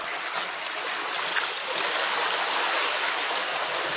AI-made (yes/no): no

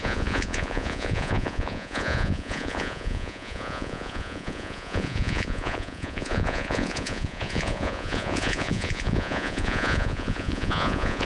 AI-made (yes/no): yes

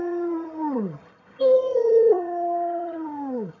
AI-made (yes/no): yes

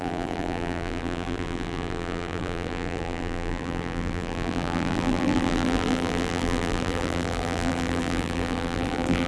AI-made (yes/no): yes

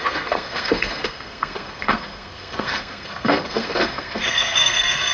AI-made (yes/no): yes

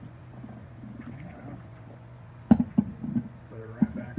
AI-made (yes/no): yes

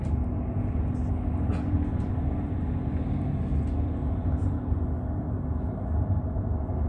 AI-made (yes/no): no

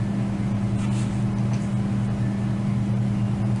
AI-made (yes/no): no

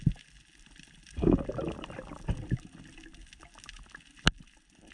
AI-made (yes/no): no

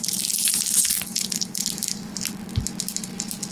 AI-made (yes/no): no